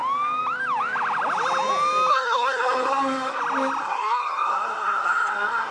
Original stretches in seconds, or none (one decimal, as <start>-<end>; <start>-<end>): 0.0-2.1; 3.4-3.8